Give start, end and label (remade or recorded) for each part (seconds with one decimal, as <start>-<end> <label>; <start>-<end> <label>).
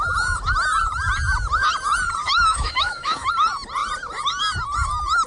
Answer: 0.0-2.2 recorded; 2.2-3.3 remade; 3.3-5.3 recorded